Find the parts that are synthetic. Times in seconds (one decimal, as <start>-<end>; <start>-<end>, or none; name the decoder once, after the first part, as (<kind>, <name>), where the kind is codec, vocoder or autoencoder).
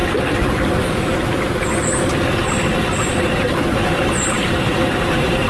3.2-5.5 (vocoder, BigVGAN v2)